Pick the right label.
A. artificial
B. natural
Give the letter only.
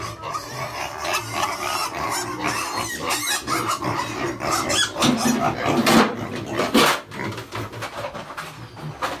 B